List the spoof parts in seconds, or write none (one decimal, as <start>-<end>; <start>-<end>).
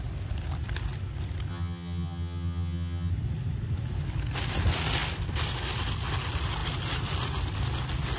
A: 1.5-3.1